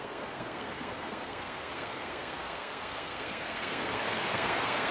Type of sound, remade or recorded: remade